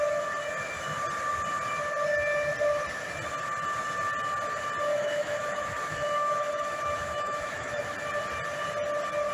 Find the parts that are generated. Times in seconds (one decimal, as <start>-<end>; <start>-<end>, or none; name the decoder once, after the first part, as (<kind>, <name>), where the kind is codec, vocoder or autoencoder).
4.9-7.8 (autoencoder, DAC-VAE)